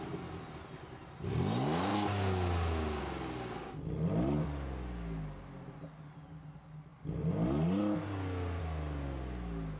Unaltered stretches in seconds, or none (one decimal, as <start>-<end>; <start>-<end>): 0.0-9.8